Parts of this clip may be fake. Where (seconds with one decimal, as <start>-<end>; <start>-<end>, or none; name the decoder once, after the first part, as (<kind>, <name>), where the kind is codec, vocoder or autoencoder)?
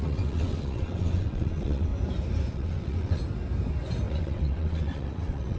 0.0-1.9 (vocoder, WaveNeXt); 2.5-3.2; 4.1-5.6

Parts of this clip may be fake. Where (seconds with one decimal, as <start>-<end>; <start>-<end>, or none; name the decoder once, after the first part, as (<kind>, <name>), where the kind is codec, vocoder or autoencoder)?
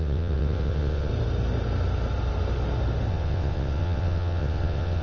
0.0-1.1 (vocoder, WaveNeXt); 3.1-5.0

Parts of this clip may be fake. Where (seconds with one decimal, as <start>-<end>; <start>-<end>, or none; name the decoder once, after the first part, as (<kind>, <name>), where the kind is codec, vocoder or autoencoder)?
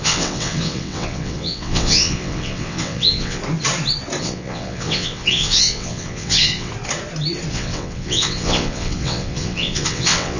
0.0-3.4 (vocoder, WaveNeXt); 4.2-6.7; 7.5-10.4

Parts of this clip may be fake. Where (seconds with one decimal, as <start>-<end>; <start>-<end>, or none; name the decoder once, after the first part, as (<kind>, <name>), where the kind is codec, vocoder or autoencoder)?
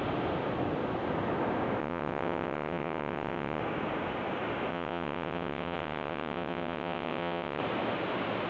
1.8-3.6 (vocoder, WaveNeXt); 4.7-7.6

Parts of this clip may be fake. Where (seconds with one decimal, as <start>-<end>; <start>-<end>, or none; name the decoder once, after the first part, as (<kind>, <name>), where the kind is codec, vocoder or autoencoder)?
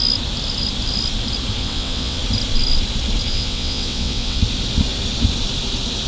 1.6-2.2 (vocoder, WaveNeXt); 3.3-4.4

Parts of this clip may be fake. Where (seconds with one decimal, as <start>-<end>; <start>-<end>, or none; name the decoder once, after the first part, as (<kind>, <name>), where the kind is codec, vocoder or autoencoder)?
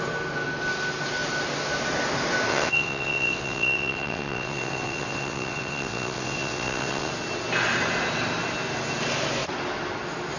2.5-7.1 (vocoder, WaveNeXt)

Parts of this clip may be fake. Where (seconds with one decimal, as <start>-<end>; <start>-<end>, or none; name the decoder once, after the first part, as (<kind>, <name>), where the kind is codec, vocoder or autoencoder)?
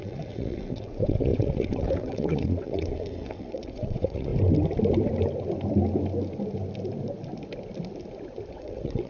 0.0-4.3 (vocoder, WaveNeXt); 8.5-9.1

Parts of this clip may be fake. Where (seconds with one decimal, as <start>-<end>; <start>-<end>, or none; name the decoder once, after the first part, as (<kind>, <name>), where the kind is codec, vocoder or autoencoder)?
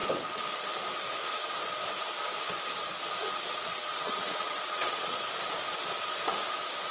0.0-0.5 (vocoder, WaveNeXt); 3.2-5.2